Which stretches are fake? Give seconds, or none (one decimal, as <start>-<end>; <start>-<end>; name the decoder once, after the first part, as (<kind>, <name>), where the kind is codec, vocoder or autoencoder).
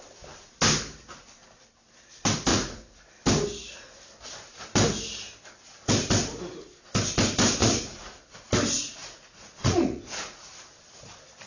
2.5-3.1 (vocoder, Vocos); 7.6-8.3; 9.0-10.5